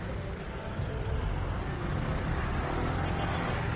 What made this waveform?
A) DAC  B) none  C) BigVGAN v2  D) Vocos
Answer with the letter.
B